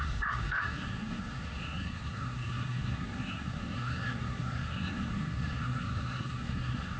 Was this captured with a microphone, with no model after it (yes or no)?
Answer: no